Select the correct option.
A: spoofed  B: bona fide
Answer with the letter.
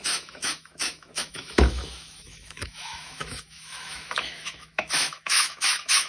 A